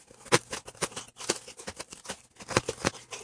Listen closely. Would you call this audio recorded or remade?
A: recorded